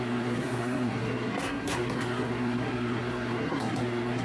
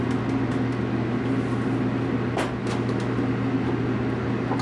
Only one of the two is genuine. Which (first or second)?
second